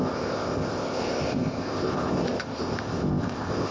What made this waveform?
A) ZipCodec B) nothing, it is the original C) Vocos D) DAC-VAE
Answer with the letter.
A